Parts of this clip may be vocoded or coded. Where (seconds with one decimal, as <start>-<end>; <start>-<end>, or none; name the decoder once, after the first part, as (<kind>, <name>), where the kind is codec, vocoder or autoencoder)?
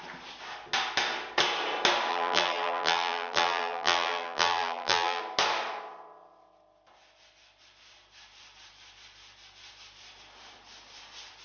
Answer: 2.1-5.2 (vocoder, BigVGAN v2)